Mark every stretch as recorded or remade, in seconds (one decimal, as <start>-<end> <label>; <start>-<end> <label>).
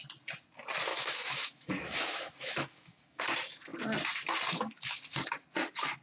0.0-0.9 recorded; 0.9-3.2 remade; 3.2-6.0 recorded